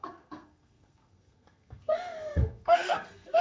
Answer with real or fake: fake